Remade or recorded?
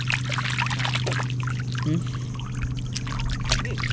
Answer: recorded